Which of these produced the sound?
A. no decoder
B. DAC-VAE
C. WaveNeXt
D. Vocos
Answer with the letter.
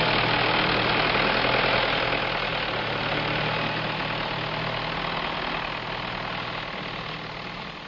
A